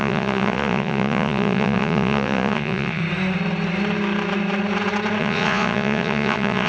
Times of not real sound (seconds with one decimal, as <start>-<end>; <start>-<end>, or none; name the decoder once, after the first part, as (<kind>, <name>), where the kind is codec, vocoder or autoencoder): 0.0-3.0 (vocoder, Vocos); 5.2-6.7